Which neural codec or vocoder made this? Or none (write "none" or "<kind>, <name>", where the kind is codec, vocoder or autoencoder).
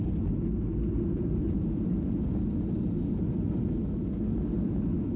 none